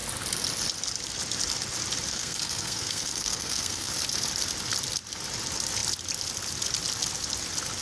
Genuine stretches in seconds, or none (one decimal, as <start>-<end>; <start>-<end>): 0.0-2.1; 3.9-7.8